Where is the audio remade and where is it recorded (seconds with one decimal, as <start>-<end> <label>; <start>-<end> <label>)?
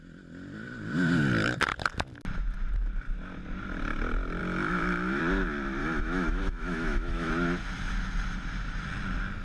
0.0-4.4 recorded; 4.4-5.2 remade; 5.2-5.8 recorded; 5.8-7.3 remade; 7.3-9.4 recorded